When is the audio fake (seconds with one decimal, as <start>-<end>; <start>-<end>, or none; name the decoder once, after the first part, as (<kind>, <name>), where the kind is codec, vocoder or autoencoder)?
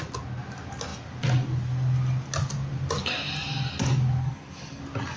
4.2-4.8 (codec, SNAC)